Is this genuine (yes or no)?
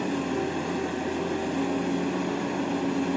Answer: yes